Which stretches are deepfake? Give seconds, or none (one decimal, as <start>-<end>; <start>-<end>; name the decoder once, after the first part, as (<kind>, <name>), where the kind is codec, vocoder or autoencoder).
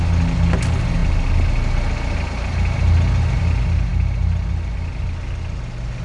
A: none